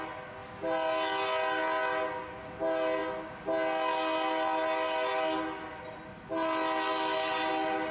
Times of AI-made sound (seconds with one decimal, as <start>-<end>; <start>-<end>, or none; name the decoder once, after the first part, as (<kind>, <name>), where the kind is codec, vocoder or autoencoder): none